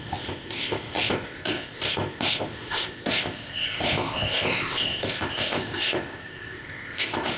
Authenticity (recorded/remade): remade